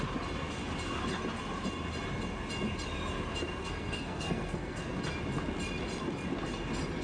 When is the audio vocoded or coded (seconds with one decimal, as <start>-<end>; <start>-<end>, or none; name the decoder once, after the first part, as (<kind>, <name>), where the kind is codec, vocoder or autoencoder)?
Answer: 3.6-5.0 (codec, SNAC)